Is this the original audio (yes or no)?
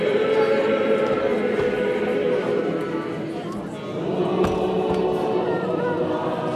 yes